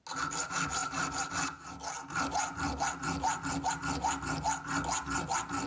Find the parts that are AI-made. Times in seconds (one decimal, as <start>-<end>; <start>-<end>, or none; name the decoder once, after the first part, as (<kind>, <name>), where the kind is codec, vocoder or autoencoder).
none

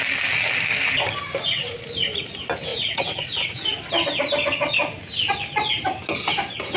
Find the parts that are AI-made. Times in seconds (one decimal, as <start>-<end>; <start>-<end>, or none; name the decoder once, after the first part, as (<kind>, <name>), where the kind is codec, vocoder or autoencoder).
2.7-3.9 (vocoder, Vocos)